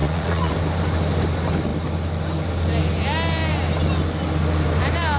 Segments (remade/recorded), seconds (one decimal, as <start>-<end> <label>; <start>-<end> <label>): 0.0-0.5 remade; 0.5-5.2 recorded